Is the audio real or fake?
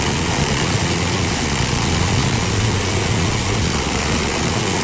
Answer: fake